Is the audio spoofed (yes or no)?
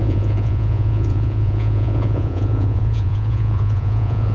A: yes